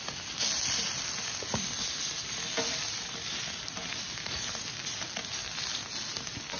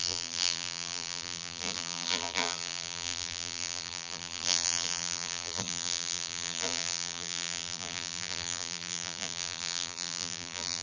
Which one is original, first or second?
first